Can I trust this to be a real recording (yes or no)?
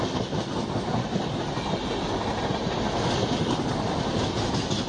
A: yes